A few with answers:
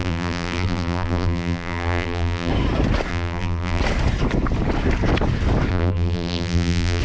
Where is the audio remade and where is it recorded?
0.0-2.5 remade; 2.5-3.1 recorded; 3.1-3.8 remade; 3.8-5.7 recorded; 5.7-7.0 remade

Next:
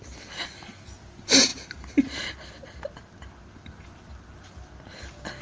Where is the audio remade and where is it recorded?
0.0-5.4 recorded

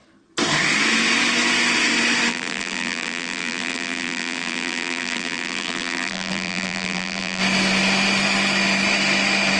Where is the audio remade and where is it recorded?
0.0-2.3 recorded; 2.3-7.4 remade; 7.4-9.6 recorded

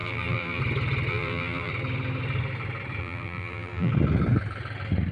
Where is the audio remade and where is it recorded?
0.0-0.6 remade; 0.6-1.1 recorded; 1.1-1.7 remade; 1.7-3.0 recorded; 3.0-3.9 remade; 3.9-5.1 recorded